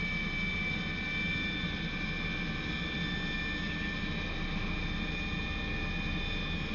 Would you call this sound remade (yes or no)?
no